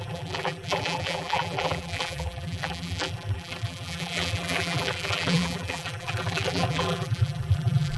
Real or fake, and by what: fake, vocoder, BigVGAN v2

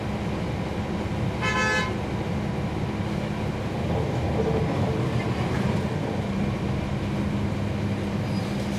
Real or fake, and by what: real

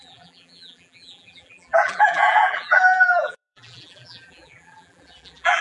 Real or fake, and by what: fake, vocoder, BigVGAN v2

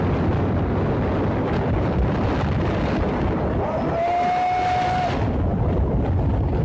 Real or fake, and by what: real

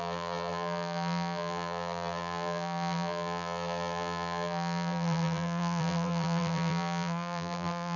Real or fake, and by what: fake, vocoder, BigVGAN v2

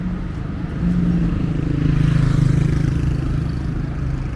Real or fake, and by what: real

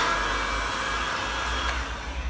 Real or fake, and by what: real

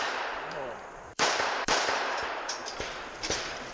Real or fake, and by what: fake, vocoder, BigVGAN v2